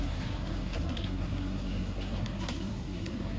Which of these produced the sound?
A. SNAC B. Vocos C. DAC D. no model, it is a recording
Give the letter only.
A